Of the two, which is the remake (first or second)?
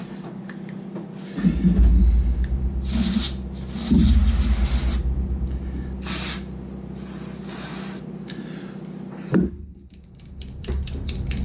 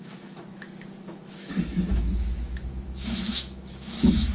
second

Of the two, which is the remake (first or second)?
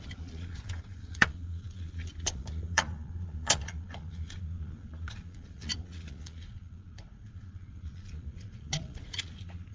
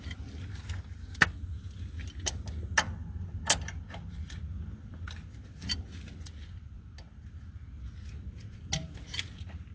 first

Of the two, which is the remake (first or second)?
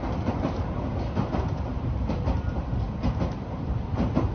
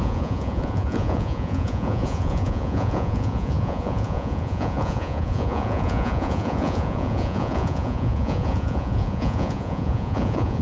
second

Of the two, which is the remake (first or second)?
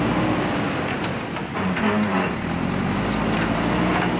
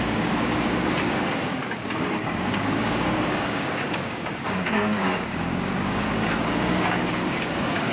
second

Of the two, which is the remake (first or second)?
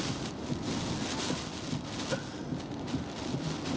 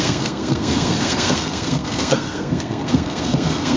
second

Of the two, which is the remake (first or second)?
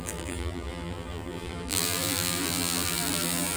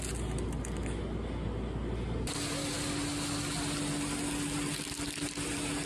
first